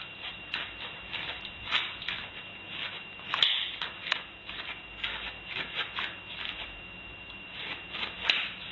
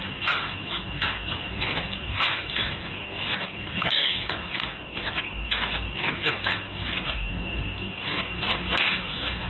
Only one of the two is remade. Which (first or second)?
second